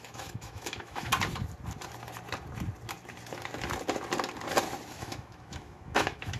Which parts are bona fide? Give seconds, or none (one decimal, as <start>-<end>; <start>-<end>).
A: 1.1-4.9